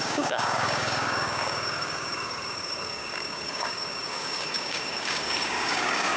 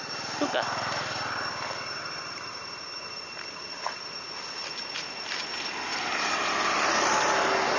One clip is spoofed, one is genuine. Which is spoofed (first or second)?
first